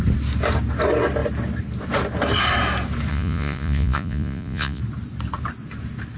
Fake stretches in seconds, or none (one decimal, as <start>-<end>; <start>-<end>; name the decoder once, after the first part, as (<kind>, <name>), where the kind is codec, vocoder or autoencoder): 3.1-4.8 (vocoder, Vocos)